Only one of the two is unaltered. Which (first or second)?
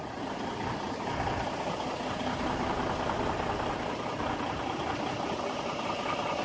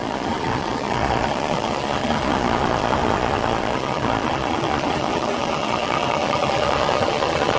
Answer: first